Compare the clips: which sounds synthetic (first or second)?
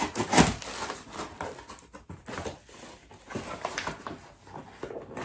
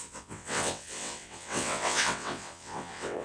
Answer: second